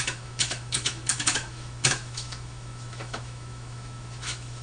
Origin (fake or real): fake